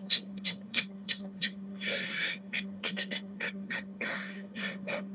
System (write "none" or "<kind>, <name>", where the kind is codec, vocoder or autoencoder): codec, SNAC